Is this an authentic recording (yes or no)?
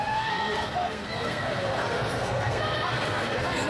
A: no